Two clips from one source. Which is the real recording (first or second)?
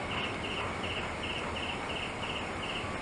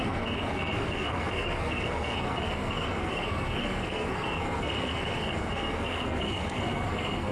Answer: first